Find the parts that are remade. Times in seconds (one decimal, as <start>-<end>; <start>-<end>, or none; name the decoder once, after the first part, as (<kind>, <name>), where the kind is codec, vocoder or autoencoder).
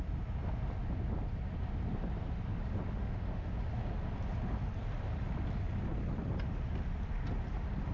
3.0-3.5 (autoencoder, DAC-VAE)